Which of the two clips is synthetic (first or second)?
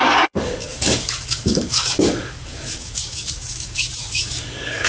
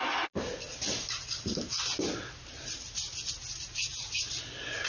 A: first